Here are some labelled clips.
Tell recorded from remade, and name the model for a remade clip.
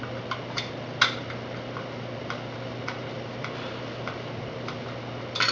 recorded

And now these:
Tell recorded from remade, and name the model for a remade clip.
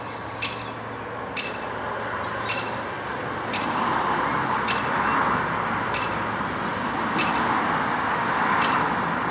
recorded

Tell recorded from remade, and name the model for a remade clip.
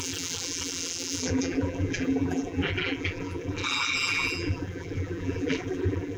remade, vocoder, BigVGAN v2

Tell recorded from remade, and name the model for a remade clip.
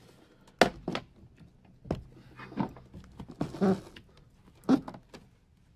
recorded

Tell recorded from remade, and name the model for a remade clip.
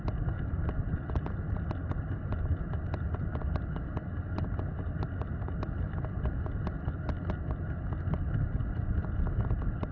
recorded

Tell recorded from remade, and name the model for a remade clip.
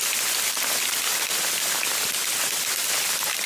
recorded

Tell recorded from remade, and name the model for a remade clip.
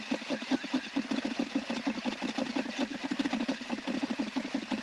recorded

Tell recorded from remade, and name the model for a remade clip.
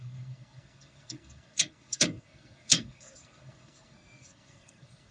remade, codec, SNAC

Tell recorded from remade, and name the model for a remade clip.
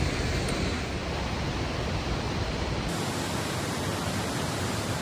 recorded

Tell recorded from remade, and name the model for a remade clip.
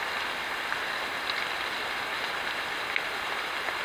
recorded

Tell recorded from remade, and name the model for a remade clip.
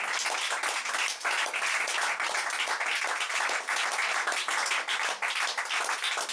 recorded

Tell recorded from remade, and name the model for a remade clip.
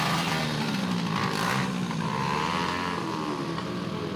remade, vocoder, BigVGAN v2